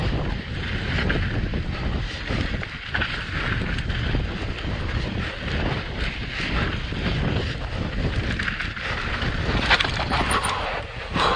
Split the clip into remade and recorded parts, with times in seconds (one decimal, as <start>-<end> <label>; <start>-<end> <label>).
0.0-11.4 recorded